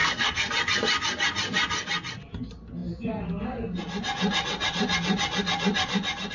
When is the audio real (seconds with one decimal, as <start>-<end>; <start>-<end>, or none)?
0.5-6.3